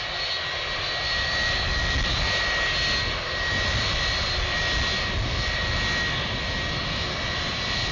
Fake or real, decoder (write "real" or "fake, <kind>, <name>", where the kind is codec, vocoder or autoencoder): real